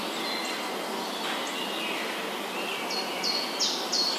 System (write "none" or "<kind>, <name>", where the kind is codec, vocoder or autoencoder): none